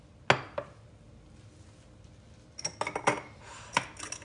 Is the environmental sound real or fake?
real